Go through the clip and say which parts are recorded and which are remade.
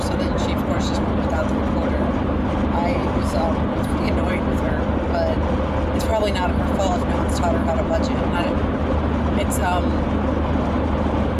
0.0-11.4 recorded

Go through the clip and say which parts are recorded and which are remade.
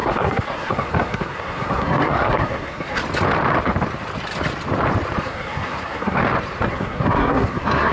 0.0-3.0 remade; 3.0-5.2 recorded; 5.2-6.2 remade; 6.2-6.7 recorded; 6.7-7.9 remade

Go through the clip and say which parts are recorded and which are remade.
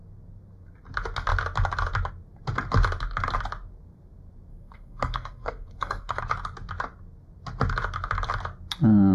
0.0-4.5 recorded; 4.5-6.2 remade; 6.2-9.1 recorded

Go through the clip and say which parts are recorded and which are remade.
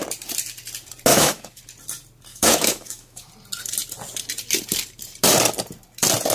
0.0-1.1 recorded; 1.1-1.6 remade; 1.6-2.3 recorded; 2.3-3.3 remade; 3.3-6.3 recorded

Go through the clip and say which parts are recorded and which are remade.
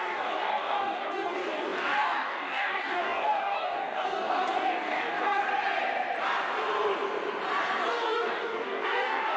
0.0-5.5 remade; 5.5-7.9 recorded; 7.9-9.4 remade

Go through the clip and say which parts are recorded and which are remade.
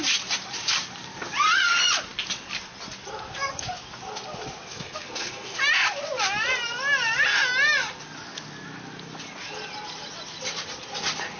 0.0-4.7 recorded; 4.7-5.5 remade; 5.5-11.4 recorded